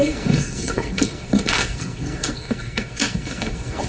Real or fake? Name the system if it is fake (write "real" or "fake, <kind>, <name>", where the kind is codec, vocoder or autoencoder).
fake, codec, SNAC